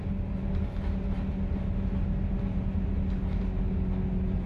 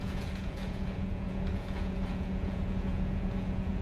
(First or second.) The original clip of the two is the first